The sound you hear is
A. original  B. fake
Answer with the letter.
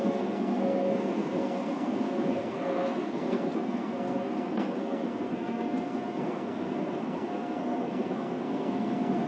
B